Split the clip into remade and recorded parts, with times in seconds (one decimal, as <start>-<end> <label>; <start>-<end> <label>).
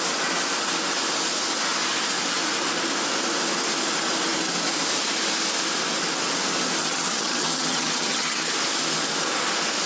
0.0-6.8 recorded; 6.8-8.5 remade; 8.5-9.9 recorded